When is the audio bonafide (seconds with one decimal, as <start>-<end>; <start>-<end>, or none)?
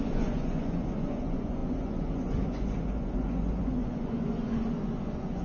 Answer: none